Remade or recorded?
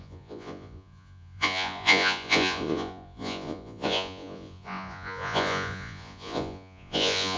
remade